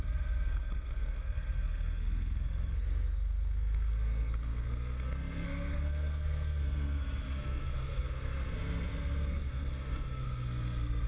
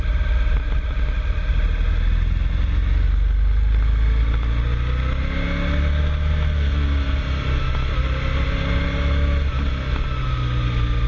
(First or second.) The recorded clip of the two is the second